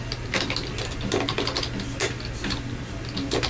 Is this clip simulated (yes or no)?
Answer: no